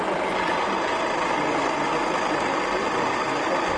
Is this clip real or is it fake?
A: real